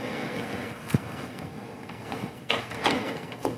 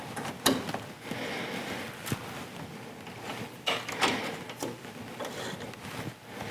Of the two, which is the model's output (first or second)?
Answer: first